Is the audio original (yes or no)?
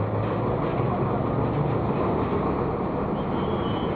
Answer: yes